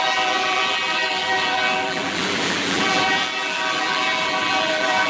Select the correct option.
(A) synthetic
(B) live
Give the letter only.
A